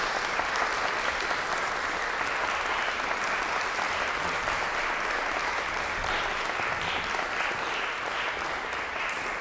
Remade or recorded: recorded